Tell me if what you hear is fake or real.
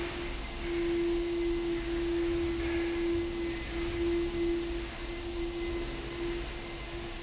real